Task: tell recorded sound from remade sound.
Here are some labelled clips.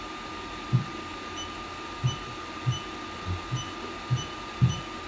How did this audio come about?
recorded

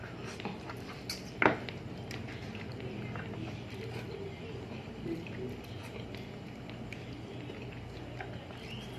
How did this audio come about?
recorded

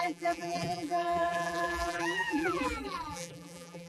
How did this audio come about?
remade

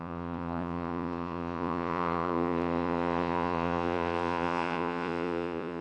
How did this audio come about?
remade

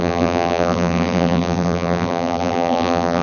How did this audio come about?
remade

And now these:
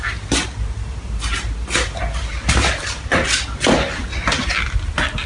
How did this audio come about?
recorded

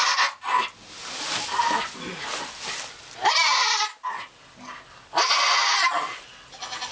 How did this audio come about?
recorded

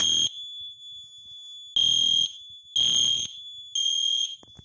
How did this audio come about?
recorded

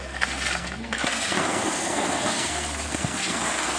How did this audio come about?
remade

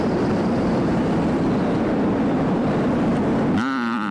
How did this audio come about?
recorded